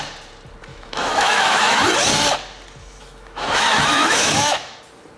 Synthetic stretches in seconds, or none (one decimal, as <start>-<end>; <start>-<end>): 0.7-1.8; 2.8-4.8